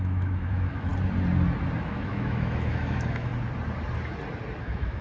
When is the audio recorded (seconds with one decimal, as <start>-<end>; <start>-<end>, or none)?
0.9-1.8; 3.3-4.6